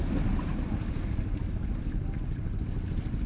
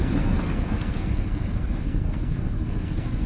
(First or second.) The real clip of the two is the first